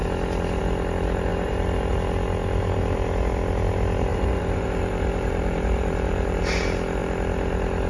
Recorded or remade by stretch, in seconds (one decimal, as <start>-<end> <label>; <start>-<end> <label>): 0.0-1.3 recorded; 1.3-1.9 remade; 1.9-4.1 recorded; 4.1-6.4 remade; 6.4-7.9 recorded